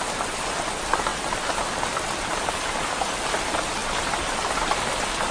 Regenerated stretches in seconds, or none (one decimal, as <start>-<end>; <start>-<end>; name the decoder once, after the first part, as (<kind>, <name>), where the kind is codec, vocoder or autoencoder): none